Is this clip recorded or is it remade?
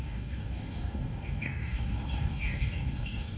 remade